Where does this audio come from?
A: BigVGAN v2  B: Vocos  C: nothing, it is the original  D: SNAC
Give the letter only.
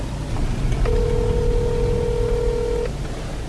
C